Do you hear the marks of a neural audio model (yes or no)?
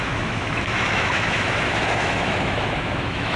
yes